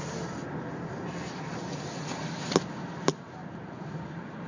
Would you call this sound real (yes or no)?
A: yes